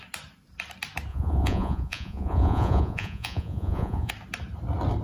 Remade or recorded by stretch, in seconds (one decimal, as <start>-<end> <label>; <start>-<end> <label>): 0.0-1.1 recorded; 1.1-4.1 remade; 4.1-5.0 recorded